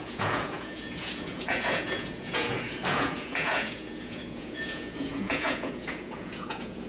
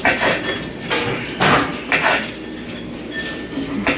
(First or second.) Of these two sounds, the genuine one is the second